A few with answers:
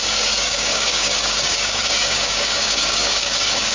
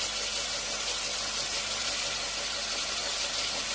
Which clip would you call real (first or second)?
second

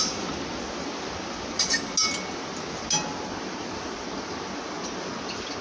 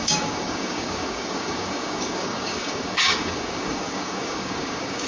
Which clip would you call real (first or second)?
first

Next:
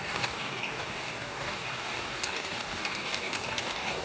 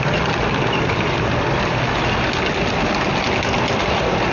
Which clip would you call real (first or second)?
second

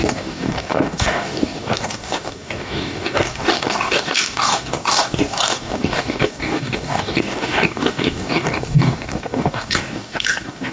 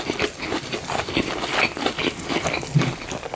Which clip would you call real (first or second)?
second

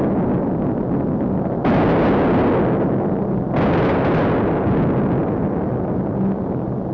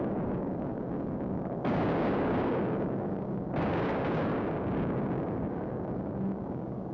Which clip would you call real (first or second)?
first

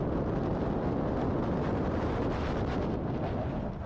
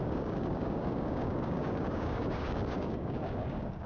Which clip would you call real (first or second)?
first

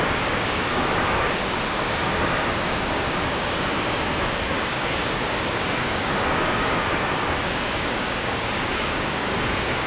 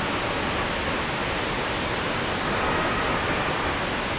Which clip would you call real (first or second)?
second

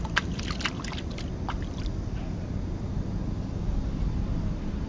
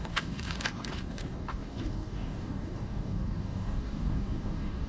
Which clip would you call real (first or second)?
first